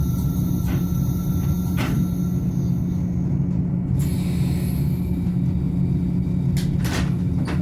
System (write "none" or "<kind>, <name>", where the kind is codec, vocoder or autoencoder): none